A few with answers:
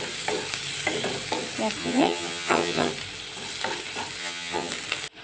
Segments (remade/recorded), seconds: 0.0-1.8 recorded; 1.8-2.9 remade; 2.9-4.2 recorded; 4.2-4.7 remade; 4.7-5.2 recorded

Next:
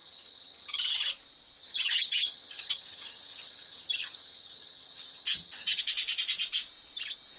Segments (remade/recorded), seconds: 0.0-1.1 remade; 1.1-1.6 recorded; 1.6-5.8 remade; 5.8-7.4 recorded

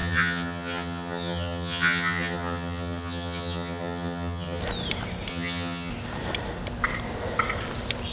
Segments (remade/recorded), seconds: 0.0-4.6 remade; 4.6-5.3 recorded; 5.3-5.9 remade; 5.9-8.1 recorded

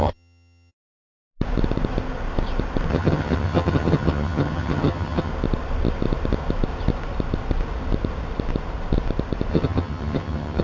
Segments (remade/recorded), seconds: 0.0-0.7 remade; 0.7-2.9 recorded; 2.9-5.3 remade; 5.3-9.5 recorded; 9.5-10.6 remade